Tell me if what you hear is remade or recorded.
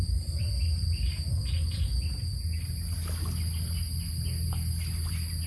recorded